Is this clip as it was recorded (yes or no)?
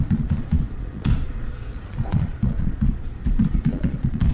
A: no